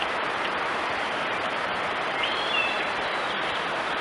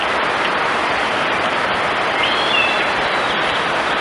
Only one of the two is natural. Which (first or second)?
second